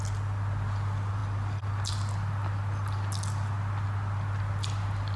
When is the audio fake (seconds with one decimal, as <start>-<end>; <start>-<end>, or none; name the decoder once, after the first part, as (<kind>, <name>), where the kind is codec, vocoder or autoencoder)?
none